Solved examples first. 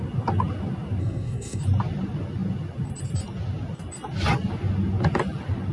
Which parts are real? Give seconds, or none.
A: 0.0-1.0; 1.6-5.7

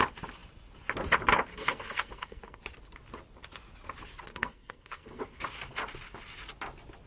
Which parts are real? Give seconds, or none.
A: 0.0-1.5; 2.6-4.3; 5.2-7.1

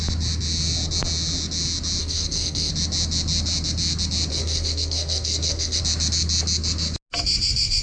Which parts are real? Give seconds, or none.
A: 0.0-2.0; 2.7-4.3; 5.8-7.8

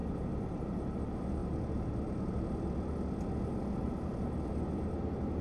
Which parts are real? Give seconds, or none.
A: 0.0-5.4

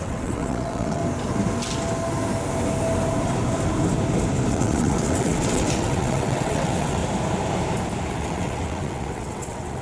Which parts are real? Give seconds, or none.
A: 1.0-4.5; 7.0-8.1

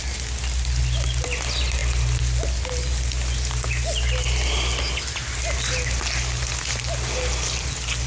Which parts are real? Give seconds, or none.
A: 0.0-8.1

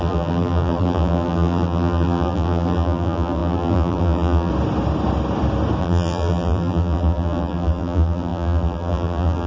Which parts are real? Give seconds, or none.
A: 4.5-5.8

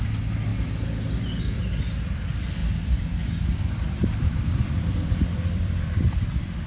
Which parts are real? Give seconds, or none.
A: 0.0-2.6